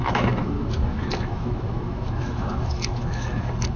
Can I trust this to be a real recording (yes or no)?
no